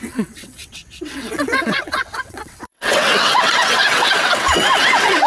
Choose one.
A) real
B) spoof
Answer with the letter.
B